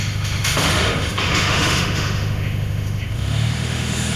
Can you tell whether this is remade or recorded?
remade